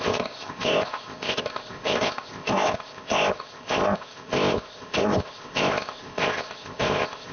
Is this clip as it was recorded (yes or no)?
no